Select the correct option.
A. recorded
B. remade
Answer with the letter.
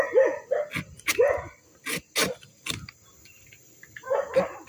A